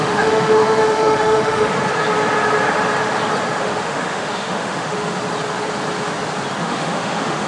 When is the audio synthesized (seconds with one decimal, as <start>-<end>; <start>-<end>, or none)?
0.0-1.7; 3.6-5.2; 6.6-7.5

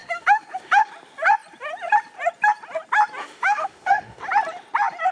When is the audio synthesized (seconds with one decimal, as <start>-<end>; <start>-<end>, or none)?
0.0-0.9; 3.2-4.2

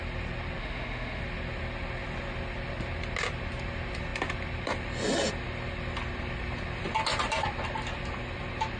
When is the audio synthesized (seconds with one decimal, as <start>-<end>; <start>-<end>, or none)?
0.6-1.2

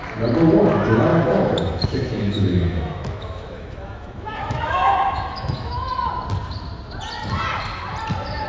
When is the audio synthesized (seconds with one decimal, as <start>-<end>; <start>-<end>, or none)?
1.1-6.1

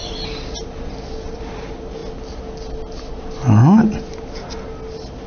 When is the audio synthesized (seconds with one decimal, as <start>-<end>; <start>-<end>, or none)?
none

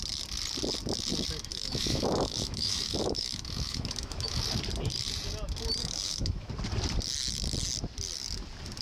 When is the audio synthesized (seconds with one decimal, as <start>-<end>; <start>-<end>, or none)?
1.5-4.4; 5.8-6.5

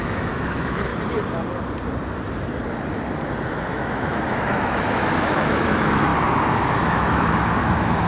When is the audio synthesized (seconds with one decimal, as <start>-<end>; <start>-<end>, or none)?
0.0-0.9; 3.6-6.1; 6.8-8.1

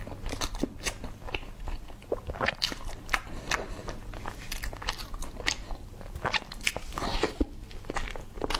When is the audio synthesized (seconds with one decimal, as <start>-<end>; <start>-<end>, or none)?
none